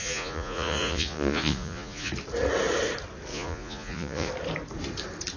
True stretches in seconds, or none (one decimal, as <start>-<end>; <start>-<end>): 2.1-3.3; 4.3-5.4